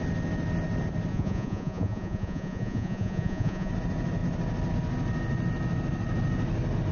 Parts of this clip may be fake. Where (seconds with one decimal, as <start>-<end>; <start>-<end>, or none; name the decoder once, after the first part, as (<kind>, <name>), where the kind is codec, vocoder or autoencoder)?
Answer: 1.1-3.7 (vocoder, Vocos)